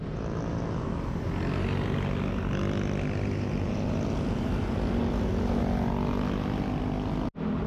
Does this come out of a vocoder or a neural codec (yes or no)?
no